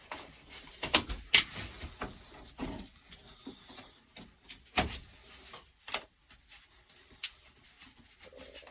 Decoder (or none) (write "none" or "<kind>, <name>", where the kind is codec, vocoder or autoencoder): none